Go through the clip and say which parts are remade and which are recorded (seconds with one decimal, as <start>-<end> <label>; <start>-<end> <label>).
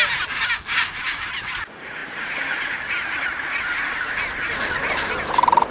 0.0-5.7 recorded